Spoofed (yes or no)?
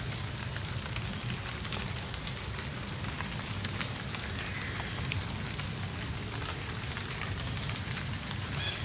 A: no